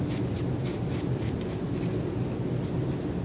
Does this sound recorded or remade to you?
recorded